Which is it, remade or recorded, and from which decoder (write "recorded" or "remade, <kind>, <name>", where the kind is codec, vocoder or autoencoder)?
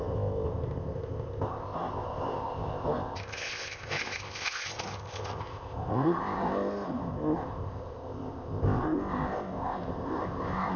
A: remade, codec, ZipCodec